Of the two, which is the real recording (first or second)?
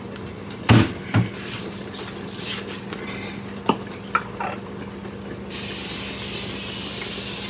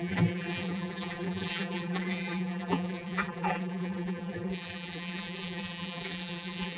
first